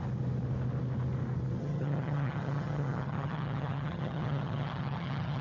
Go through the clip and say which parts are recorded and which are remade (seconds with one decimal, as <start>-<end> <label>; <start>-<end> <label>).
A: 0.0-1.6 recorded; 1.6-5.4 remade